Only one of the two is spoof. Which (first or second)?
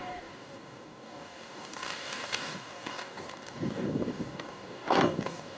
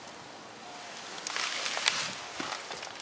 first